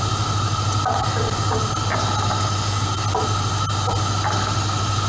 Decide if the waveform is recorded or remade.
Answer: recorded